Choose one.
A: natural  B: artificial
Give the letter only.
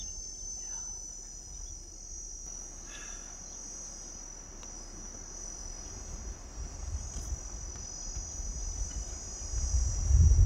A